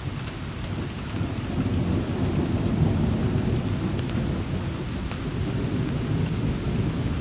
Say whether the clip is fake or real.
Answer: real